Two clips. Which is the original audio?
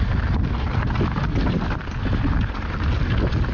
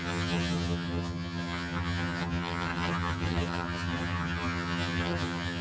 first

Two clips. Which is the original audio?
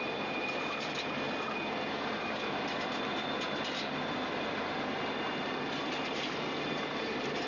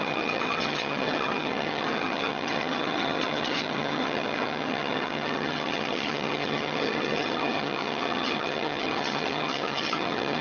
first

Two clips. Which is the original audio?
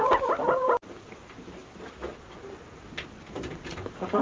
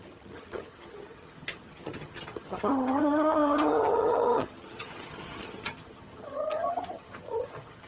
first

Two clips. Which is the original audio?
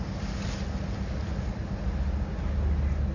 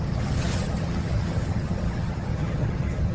first